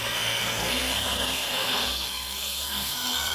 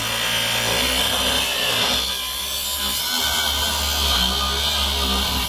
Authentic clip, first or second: second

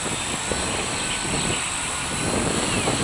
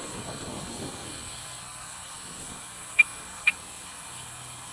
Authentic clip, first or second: first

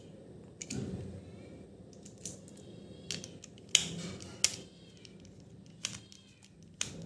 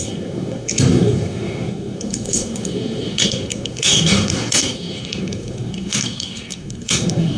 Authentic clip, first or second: first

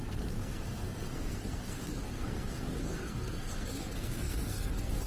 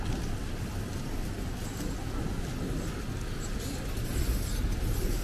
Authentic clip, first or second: second